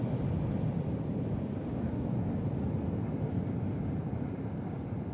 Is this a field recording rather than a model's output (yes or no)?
yes